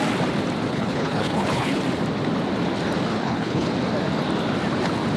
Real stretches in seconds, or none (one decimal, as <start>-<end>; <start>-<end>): 0.0-0.7; 1.8-3.1; 3.7-5.2